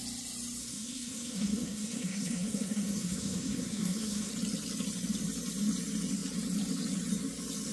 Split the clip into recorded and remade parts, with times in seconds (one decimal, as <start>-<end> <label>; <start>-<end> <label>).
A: 0.0-0.6 recorded; 0.6-4.3 remade; 4.3-7.7 recorded